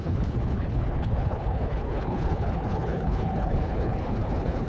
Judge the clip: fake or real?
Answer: fake